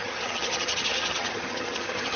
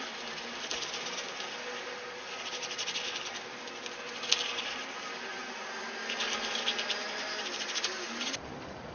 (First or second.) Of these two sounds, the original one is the second